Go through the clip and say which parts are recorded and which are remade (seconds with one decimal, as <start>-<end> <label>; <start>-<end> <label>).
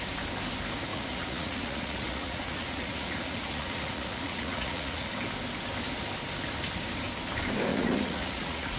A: 0.0-0.9 recorded; 0.9-5.1 remade; 5.1-7.7 recorded; 7.7-8.8 remade